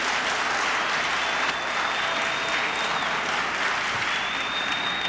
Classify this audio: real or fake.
real